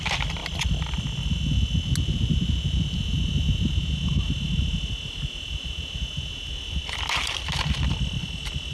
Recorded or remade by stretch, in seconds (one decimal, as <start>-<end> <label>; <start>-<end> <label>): 0.0-8.7 recorded